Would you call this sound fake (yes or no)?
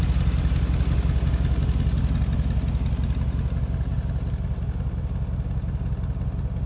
no